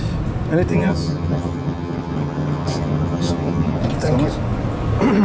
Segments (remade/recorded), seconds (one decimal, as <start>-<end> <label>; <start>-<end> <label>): 0.0-0.7 recorded; 0.7-3.8 remade; 3.8-5.2 recorded